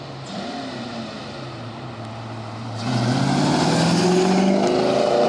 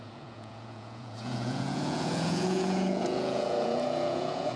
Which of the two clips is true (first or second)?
first